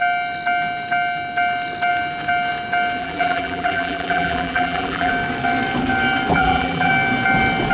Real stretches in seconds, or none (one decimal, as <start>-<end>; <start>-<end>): 0.0-3.0; 5.1-6.3; 6.9-7.7